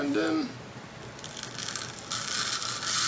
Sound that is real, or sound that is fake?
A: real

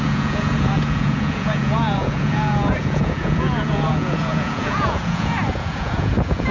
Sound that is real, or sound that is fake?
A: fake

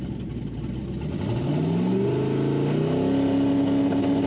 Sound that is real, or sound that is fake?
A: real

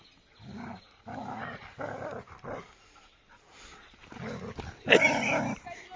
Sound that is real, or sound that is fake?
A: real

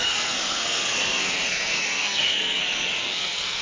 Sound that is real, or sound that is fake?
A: fake